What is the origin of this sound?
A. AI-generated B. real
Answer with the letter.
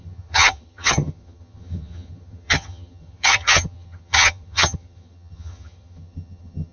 A